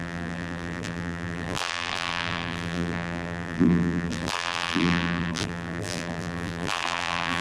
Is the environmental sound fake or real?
fake